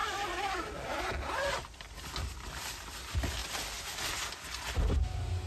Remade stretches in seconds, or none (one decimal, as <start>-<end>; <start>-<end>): none